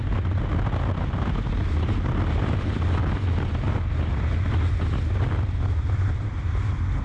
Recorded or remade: recorded